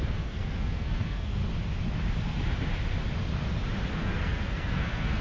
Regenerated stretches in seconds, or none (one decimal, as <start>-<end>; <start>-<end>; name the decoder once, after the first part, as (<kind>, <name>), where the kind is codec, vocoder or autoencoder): 0.0-1.4 (codec, SNAC); 3.9-5.2